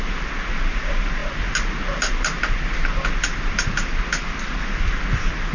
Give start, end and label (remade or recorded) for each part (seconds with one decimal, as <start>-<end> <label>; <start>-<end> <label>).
0.0-5.5 recorded